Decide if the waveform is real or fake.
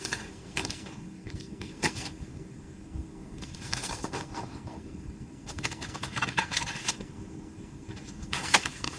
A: fake